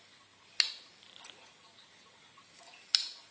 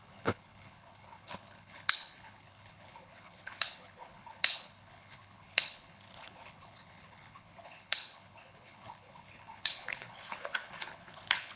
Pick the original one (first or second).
first